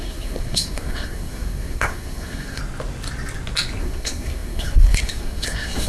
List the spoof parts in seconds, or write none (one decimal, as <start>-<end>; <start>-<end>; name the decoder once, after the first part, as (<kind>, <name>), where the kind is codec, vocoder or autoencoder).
0.0-2.6 (codec, SNAC); 3.8-5.9